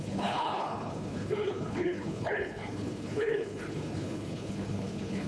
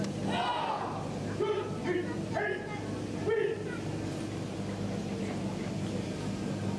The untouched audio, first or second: second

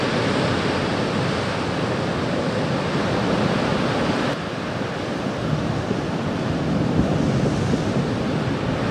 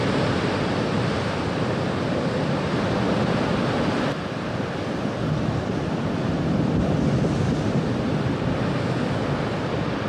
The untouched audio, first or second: first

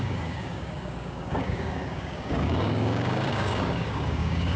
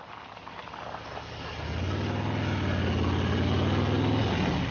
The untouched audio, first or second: second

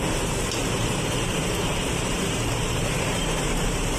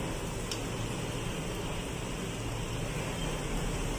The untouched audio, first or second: second